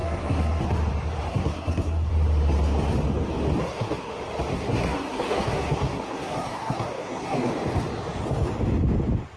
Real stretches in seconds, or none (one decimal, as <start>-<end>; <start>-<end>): 0.6-1.3; 2.1-3.6; 4.1-4.5; 7.5-9.4